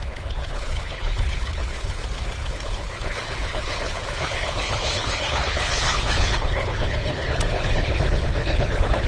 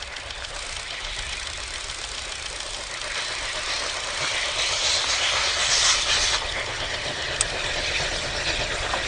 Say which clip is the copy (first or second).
first